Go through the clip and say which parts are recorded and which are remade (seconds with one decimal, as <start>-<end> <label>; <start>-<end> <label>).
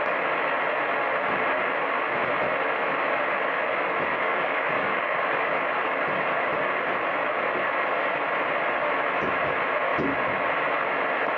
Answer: 0.0-4.1 recorded; 4.1-5.2 remade; 5.2-11.4 recorded